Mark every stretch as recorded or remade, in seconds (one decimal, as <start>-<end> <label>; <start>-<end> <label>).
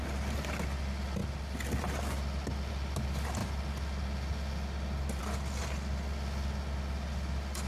0.0-7.7 recorded